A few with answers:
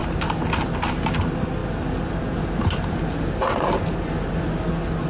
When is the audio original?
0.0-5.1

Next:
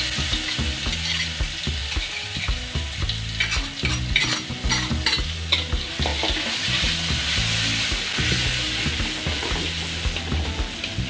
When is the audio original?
0.0-11.1

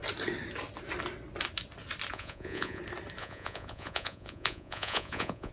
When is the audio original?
0.0-2.1; 2.8-3.2